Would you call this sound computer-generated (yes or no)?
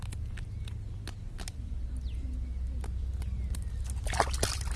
no